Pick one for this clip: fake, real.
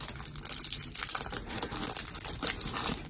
real